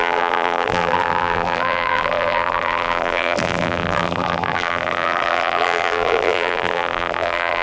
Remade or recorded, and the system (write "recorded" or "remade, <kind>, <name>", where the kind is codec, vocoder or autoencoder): remade, vocoder, BigVGAN v2